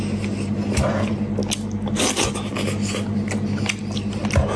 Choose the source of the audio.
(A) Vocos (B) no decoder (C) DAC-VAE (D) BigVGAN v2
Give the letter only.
B